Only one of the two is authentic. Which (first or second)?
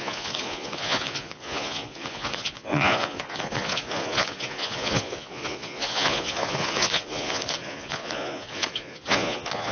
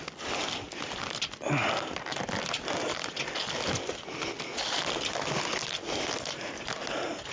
second